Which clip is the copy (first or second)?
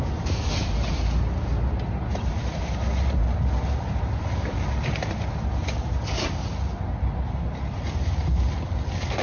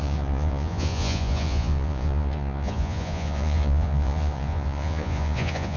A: second